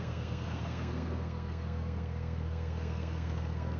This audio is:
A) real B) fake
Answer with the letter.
B